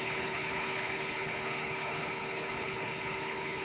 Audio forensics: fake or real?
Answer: fake